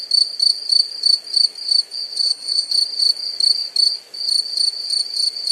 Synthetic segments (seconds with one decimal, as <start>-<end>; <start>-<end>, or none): 2.2-2.7